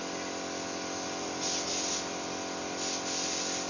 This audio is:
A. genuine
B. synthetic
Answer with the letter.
A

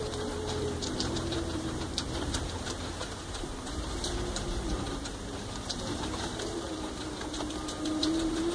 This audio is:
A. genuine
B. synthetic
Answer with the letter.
B